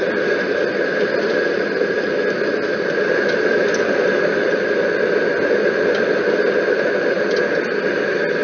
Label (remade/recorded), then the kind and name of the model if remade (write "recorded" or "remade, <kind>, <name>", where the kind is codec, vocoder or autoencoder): recorded